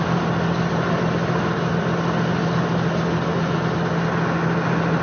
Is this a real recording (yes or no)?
yes